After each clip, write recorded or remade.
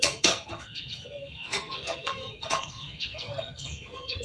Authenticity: remade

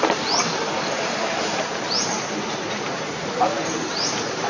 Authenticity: remade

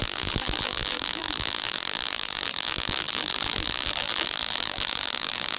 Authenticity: remade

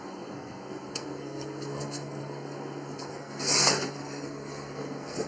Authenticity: remade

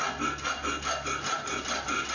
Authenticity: recorded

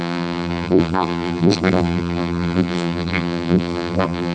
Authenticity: remade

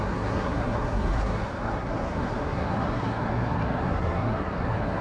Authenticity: remade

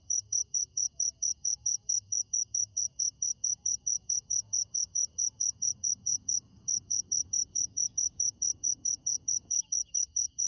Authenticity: remade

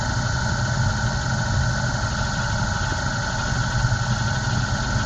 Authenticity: recorded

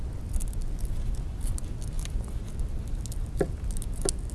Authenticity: recorded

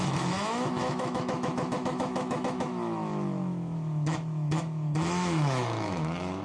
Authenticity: remade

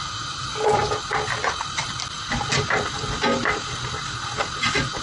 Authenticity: recorded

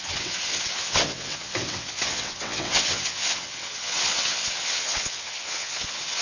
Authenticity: remade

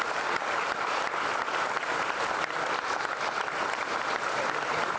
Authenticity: recorded